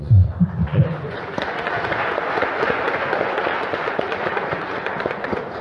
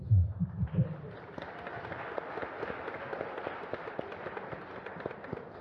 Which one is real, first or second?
second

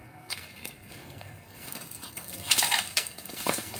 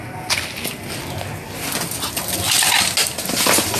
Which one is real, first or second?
second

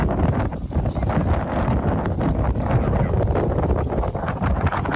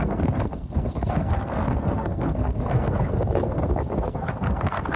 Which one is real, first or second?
first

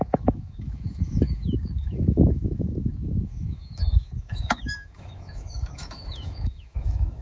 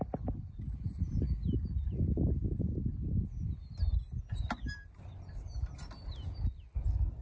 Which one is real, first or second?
second